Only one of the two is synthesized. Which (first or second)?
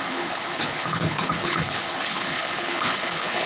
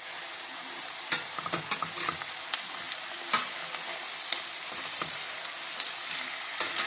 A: first